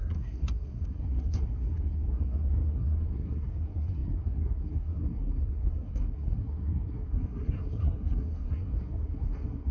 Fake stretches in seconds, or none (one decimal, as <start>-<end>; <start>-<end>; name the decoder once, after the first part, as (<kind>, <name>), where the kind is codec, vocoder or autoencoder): 0.0-9.7 (codec, SNAC)